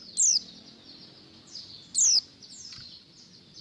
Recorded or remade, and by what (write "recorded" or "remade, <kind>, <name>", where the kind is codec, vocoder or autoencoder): recorded